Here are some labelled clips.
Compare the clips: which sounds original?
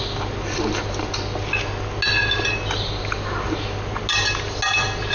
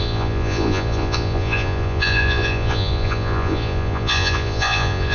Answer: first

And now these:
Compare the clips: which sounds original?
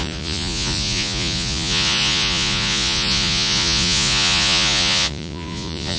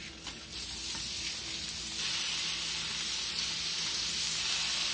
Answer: second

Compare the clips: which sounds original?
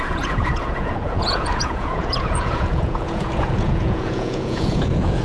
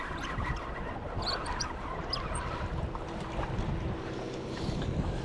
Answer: second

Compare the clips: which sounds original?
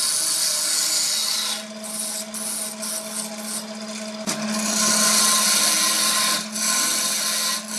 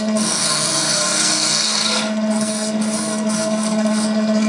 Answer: first